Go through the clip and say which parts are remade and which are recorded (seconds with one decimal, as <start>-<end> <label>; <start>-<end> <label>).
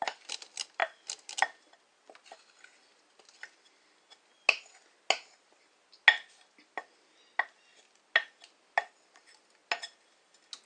0.0-10.7 recorded